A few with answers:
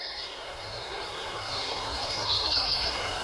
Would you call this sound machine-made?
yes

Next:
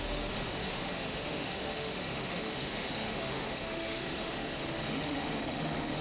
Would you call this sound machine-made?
yes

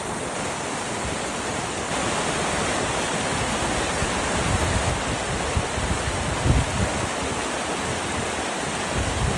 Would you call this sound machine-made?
no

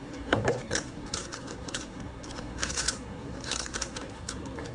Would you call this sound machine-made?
yes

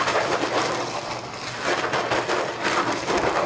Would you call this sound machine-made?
no